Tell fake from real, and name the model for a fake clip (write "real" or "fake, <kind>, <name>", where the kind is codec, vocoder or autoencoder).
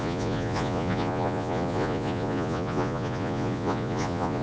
fake, vocoder, Vocos